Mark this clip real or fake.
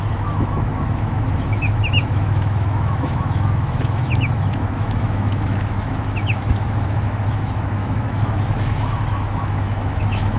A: fake